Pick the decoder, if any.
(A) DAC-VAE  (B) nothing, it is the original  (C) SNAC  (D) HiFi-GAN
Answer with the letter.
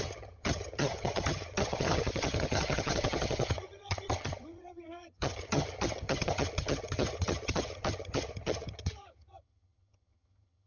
D